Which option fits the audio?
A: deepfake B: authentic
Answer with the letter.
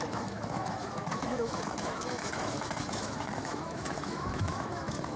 A